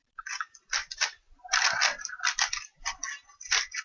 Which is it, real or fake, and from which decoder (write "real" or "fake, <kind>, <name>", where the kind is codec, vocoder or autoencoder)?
real